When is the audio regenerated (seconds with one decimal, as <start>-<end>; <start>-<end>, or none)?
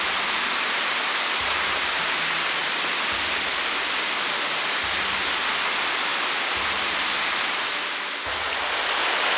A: none